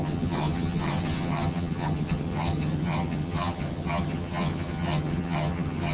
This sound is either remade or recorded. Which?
remade